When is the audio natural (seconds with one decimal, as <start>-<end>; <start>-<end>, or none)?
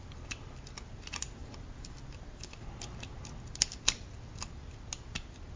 0.0-5.6